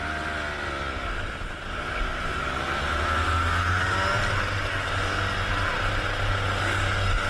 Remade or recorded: recorded